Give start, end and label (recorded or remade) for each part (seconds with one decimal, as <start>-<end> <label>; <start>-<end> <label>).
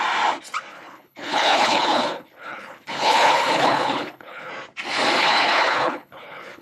0.0-0.7 recorded; 0.7-4.5 remade; 4.5-5.2 recorded; 5.2-6.6 remade